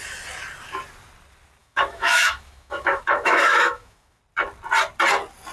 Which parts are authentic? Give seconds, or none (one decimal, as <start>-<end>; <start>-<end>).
0.0-1.6; 4.2-5.5